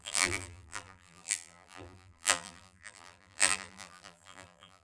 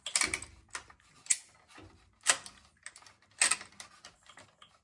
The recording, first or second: second